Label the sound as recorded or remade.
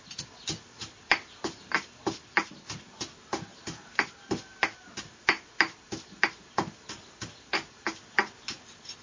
recorded